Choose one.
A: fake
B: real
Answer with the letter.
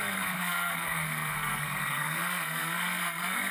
A